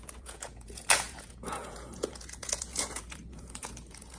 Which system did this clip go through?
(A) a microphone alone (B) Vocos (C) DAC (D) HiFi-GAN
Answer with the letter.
B